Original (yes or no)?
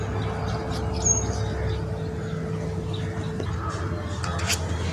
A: yes